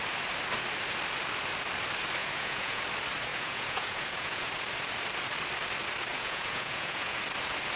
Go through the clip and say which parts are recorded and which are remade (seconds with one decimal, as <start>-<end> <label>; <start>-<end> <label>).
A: 0.0-2.2 recorded; 2.2-2.8 remade; 2.8-3.3 recorded; 3.3-4.5 remade; 4.5-6.1 recorded; 6.1-7.2 remade; 7.2-7.8 recorded